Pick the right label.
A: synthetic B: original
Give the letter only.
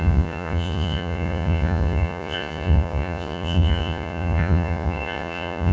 A